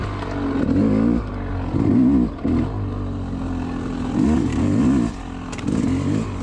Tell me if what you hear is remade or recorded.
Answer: recorded